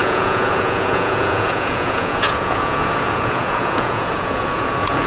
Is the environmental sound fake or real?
fake